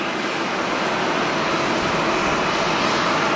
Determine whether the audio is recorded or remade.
recorded